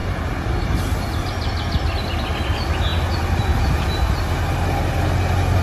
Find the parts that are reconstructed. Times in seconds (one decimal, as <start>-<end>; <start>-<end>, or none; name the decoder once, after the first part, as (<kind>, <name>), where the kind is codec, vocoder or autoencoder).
none